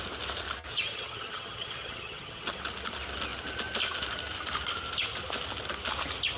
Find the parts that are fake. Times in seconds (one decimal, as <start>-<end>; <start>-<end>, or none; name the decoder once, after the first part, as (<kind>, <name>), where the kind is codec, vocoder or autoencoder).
0.7-2.6 (vocoder, HiFi-GAN)